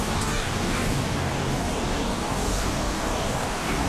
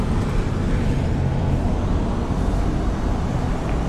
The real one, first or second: second